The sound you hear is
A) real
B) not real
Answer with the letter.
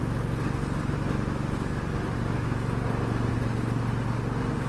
A